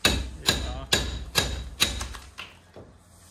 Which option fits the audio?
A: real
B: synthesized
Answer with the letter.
A